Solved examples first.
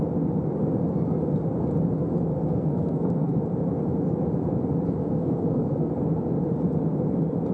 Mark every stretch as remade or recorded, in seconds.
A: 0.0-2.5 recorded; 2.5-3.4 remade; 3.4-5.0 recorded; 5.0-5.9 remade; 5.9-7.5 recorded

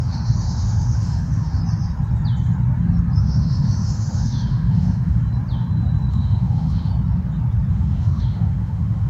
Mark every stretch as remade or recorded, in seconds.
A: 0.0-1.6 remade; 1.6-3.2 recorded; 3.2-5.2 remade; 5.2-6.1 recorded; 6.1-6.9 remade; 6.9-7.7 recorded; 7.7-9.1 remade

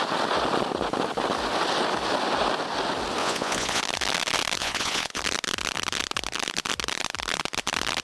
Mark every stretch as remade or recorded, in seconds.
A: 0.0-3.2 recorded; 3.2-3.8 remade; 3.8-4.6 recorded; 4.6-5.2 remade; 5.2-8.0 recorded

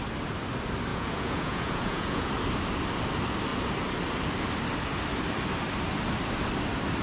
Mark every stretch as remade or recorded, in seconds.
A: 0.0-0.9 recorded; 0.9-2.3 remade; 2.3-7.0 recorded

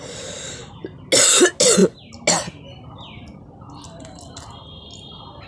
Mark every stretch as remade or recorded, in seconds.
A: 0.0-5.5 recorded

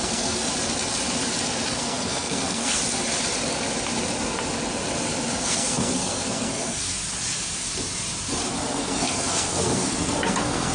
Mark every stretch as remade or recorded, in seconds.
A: 0.0-0.4 remade; 0.4-1.7 recorded; 1.7-2.8 remade; 2.8-5.4 recorded; 5.4-7.0 remade; 7.0-8.6 recorded; 8.6-10.7 remade

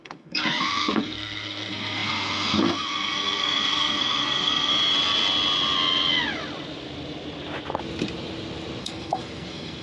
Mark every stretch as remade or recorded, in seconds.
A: 0.0-4.7 remade; 4.7-8.8 recorded; 8.8-9.8 remade